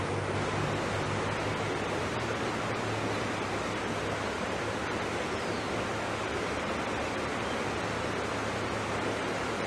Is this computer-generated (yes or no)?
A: no